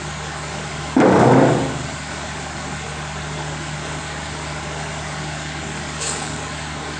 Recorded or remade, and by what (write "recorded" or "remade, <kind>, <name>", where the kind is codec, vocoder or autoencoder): remade, codec, DAC